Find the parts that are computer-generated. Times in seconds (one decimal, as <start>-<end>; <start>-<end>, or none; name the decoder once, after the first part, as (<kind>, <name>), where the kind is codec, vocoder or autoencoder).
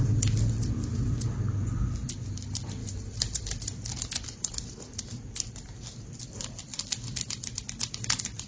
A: none